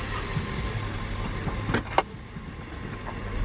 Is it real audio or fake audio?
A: real